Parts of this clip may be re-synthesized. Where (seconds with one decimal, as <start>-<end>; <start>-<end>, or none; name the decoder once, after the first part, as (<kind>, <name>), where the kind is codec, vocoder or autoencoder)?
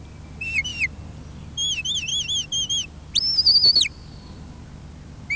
none